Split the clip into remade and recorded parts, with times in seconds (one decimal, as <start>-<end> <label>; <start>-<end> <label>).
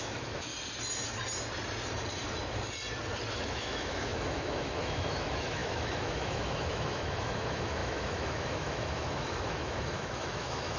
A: 0.0-0.5 remade; 0.5-3.3 recorded; 3.3-10.8 remade